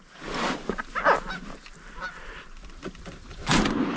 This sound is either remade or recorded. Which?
recorded